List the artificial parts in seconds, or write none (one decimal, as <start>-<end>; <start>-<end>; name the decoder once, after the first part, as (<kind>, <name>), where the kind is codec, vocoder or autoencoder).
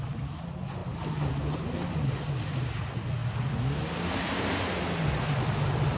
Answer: none